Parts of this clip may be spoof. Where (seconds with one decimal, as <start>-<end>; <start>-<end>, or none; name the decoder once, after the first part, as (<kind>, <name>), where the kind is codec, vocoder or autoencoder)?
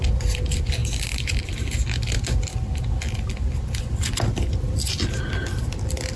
none